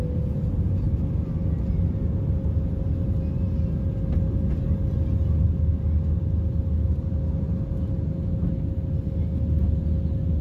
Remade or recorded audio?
recorded